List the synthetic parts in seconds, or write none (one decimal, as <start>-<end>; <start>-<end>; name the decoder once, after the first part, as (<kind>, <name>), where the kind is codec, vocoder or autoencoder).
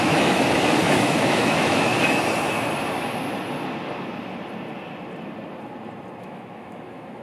0.0-1.9 (autoencoder, DAC-VAE); 6.2-7.2